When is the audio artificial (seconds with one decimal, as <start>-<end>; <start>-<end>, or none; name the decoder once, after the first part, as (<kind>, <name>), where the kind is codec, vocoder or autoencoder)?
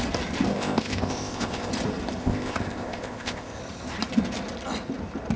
0.5-1.7 (codec, ZipCodec); 2.2-3.6